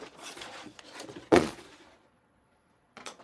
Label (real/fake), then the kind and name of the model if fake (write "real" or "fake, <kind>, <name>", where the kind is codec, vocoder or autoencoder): fake, vocoder, Vocos